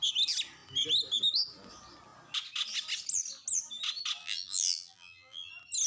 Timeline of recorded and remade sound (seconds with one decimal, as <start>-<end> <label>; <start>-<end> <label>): 0.0-4.2 recorded; 4.2-5.5 remade; 5.5-5.9 recorded